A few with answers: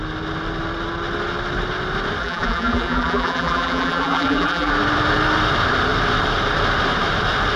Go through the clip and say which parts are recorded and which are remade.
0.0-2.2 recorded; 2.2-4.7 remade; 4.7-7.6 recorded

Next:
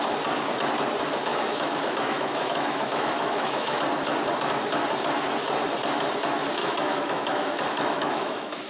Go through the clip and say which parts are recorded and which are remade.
0.0-1.3 recorded; 1.3-3.8 remade; 3.8-6.6 recorded; 6.6-8.7 remade

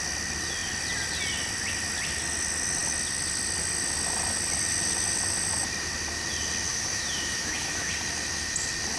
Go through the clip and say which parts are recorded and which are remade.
0.0-6.7 recorded; 6.7-7.9 remade; 7.9-9.0 recorded

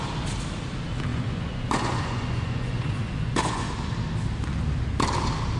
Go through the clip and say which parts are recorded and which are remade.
0.0-1.1 recorded; 1.1-3.7 remade; 3.7-5.6 recorded

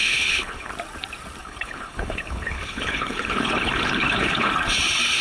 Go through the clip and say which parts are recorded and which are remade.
0.0-0.7 remade; 0.7-1.4 recorded; 1.4-4.5 remade; 4.5-5.2 recorded